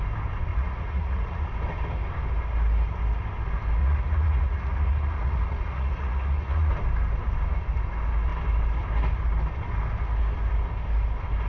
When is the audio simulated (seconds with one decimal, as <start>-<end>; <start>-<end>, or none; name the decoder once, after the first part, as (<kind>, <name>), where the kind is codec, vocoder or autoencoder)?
0.5-1.5 (vocoder, Vocos); 3.8-6.7